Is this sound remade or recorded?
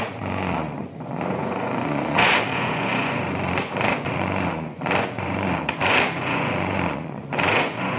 remade